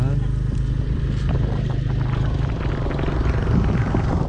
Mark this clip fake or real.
real